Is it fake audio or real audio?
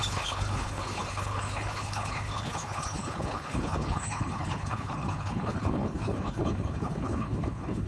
fake